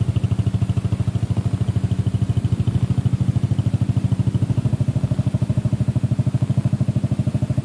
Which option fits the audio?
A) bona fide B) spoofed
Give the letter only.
A